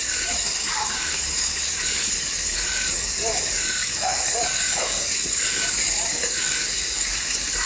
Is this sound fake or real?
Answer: fake